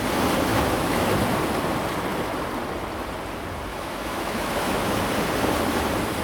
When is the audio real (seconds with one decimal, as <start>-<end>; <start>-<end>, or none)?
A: 0.0-0.5; 1.1-3.7; 5.0-6.2